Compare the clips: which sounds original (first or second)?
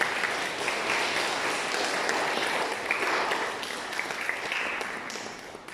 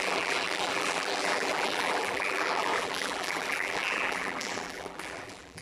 first